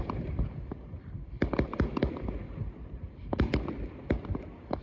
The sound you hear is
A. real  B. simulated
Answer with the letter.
A